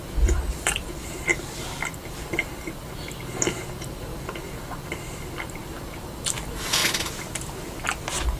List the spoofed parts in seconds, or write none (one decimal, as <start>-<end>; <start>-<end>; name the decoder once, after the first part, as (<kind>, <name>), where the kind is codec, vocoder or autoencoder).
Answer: 0.0-1.3 (vocoder, BigVGAN v2); 2.0-6.8